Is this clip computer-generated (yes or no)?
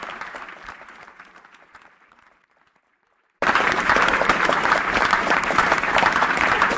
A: yes